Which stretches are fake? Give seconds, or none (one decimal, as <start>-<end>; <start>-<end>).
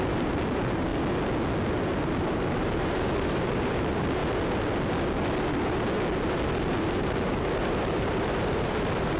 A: 0.0-0.9; 1.7-4.2; 6.6-9.2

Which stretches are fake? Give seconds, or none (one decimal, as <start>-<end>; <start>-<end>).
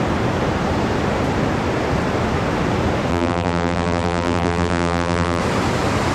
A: 3.1-5.4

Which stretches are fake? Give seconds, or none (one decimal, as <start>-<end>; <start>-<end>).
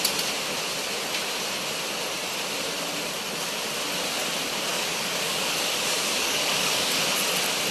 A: 4.7-7.0